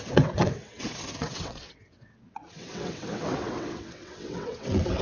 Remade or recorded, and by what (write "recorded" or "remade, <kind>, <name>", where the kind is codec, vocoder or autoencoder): remade, vocoder, WaveNeXt